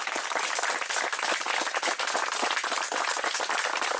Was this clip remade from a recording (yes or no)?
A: no